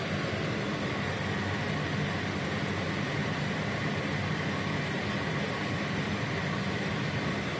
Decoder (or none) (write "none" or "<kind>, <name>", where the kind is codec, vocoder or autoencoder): none